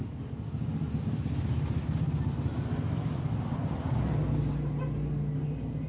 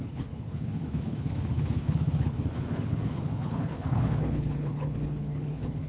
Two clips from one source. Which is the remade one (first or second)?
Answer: second